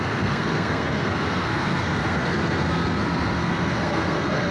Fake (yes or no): yes